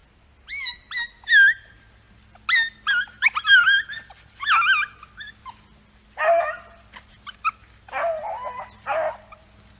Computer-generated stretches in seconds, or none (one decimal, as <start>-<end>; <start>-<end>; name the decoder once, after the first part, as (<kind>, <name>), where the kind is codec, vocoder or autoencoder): none